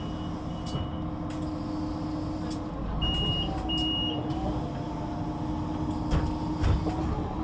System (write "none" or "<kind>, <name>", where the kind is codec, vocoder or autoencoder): none